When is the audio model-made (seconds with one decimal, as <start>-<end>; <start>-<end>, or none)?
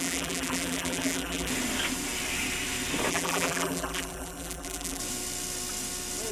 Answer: 0.0-1.5; 3.1-5.0